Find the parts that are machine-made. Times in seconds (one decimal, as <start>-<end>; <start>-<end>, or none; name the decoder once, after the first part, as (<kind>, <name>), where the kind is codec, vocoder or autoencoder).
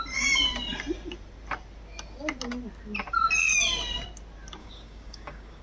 4.6-5.6 (codec, DAC)